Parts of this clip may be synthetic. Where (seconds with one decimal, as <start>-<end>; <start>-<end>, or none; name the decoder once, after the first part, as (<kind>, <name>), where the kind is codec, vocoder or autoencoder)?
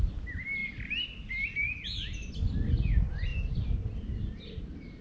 none